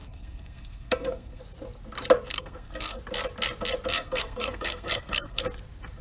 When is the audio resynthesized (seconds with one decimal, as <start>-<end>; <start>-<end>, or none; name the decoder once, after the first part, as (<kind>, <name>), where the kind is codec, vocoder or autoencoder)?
0.0-1.4 (codec, SNAC); 2.3-3.0; 3.9-5.4